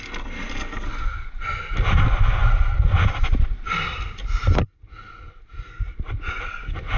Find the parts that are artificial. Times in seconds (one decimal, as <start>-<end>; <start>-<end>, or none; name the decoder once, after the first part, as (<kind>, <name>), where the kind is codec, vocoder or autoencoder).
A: none